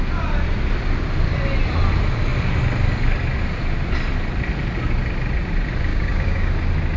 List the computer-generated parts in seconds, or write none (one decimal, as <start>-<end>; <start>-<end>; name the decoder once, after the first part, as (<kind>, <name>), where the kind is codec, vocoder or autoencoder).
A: 5.9-6.5 (codec, DAC)